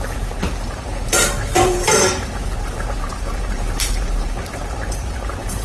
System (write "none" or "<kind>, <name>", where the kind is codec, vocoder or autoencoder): vocoder, BigVGAN v2